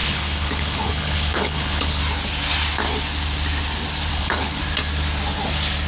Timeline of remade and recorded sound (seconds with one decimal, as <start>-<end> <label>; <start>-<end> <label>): 0.0-2.0 remade; 2.0-4.1 recorded; 4.1-4.6 remade; 4.6-5.9 recorded